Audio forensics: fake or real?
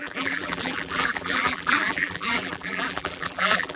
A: fake